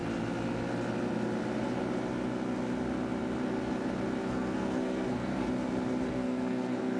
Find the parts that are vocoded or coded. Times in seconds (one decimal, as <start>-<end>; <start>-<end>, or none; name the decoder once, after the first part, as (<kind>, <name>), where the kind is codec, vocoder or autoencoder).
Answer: 4.2-5.3 (codec, SNAC); 6.1-7.0